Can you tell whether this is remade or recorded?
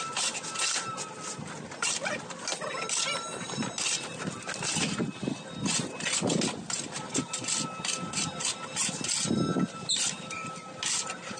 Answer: recorded